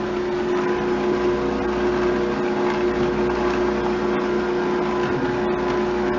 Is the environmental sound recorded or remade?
recorded